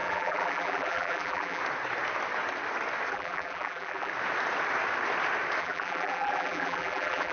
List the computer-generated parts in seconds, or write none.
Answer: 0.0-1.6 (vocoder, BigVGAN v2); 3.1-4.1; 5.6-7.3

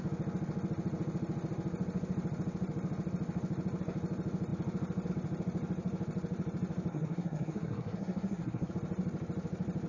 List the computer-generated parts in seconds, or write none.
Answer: 6.9-8.7 (codec, SNAC)

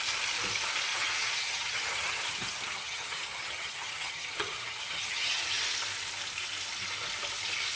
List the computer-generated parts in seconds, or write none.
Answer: 0.9-5.6 (vocoder, HiFi-GAN)

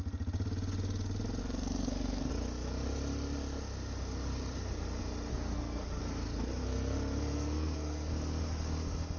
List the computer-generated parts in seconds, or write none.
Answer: 1.4-2.3 (codec, SNAC); 5.3-6.0; 6.6-8.1

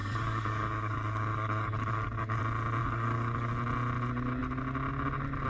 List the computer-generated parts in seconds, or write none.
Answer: 0.0-2.4 (codec, DAC); 2.8-3.5

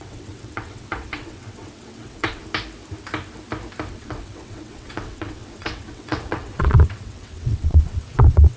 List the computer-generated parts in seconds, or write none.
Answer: 0.0-2.4 (vocoder, WaveNeXt); 3.9-8.6

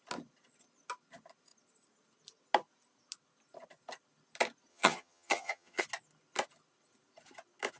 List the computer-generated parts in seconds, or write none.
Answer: 4.7-5.8 (vocoder, HiFi-GAN)